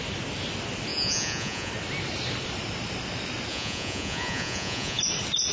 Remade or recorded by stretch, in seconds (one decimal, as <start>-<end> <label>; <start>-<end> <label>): 0.0-0.9 recorded; 0.9-1.7 remade; 1.7-3.5 recorded; 3.5-5.0 remade; 5.0-5.5 recorded